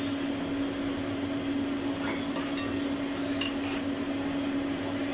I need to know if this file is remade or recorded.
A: recorded